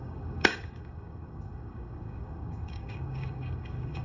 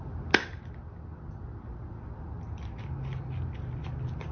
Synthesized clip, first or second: first